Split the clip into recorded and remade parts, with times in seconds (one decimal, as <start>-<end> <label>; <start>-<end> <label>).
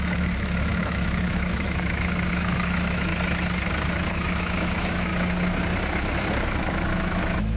0.0-3.1 remade; 3.1-4.1 recorded; 4.1-5.1 remade; 5.1-6.5 recorded; 6.5-7.6 remade